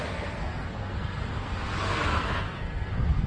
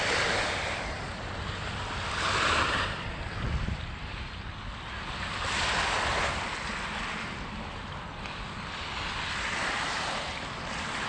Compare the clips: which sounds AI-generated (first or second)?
first